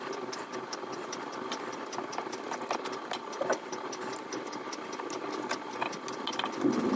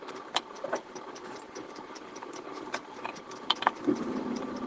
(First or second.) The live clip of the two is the first